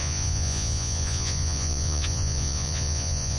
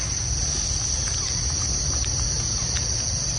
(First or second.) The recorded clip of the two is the second